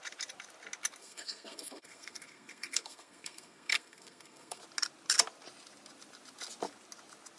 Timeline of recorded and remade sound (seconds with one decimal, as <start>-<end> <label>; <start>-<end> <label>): 0.0-1.0 recorded; 1.0-4.6 remade; 4.6-7.4 recorded